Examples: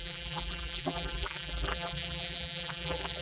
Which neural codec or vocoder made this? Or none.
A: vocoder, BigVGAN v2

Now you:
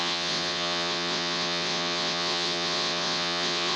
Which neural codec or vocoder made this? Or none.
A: vocoder, WaveNeXt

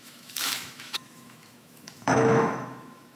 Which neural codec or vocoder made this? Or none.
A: autoencoder, DAC-VAE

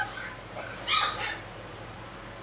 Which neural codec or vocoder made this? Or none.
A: none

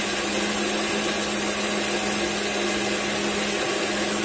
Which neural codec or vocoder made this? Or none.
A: none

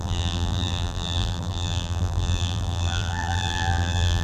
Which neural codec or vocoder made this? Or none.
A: vocoder, BigVGAN v2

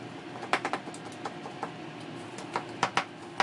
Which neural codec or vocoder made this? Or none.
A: none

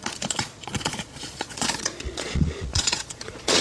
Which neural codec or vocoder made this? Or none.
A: vocoder, Vocos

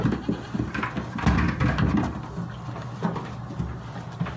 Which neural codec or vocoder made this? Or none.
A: none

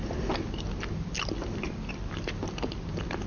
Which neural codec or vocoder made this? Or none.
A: none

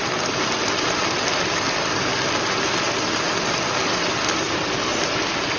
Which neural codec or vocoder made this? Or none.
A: vocoder, BigVGAN v2